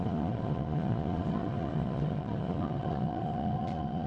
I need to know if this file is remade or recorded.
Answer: remade